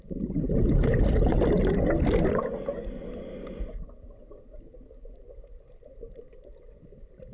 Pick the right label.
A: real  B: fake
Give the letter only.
A